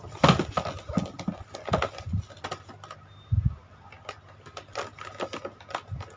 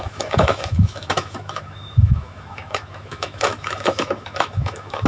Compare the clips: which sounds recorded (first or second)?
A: first